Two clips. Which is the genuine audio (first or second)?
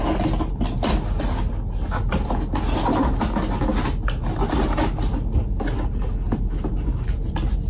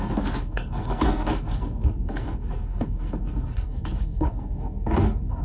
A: first